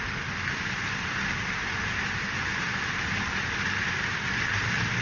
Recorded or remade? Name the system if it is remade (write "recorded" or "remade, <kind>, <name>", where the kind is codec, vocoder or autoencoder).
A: recorded